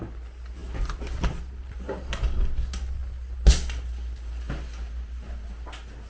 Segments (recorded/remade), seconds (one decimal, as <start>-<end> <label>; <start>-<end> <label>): 0.0-6.1 recorded